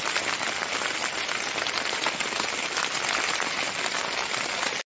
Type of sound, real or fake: real